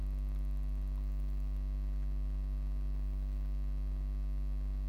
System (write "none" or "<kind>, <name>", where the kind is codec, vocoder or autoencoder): none